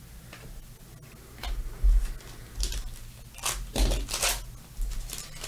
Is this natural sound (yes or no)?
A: yes